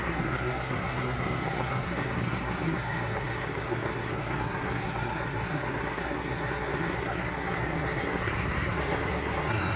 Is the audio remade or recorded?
remade